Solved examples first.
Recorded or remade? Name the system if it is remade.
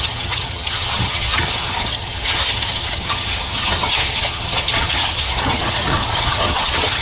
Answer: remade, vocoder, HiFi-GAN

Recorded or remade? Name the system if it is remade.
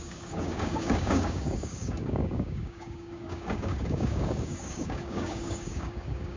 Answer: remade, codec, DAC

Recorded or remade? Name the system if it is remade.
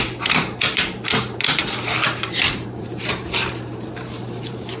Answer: remade, vocoder, BigVGAN v2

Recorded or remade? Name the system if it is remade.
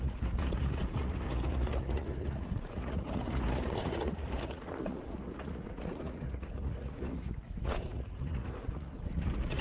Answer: remade, vocoder, Vocos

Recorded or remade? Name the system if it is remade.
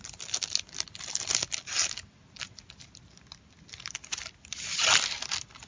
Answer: recorded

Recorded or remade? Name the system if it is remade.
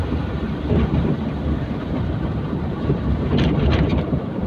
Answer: remade, vocoder, BigVGAN v2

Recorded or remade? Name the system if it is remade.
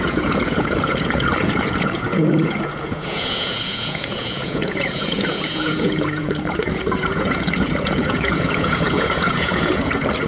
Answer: remade, vocoder, Vocos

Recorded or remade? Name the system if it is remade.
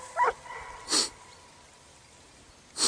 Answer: recorded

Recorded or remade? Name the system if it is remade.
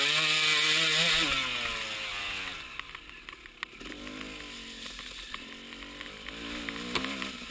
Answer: recorded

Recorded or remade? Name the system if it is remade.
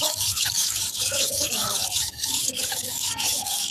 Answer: remade, codec, DAC